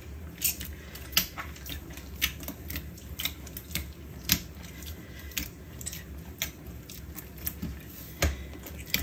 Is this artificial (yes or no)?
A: no